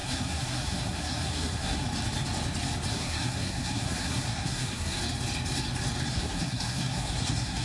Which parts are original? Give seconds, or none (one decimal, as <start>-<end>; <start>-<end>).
1.8-2.9; 5.0-6.1